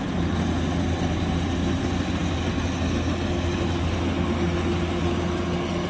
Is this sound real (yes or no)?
yes